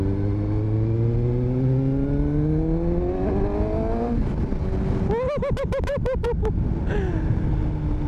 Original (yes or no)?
yes